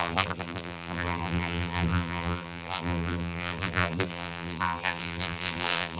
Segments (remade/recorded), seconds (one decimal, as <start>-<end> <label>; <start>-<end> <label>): 0.0-6.0 remade